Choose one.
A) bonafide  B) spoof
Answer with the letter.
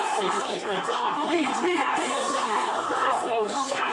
B